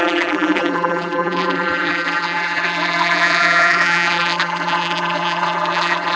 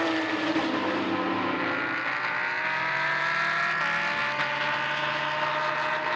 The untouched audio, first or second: second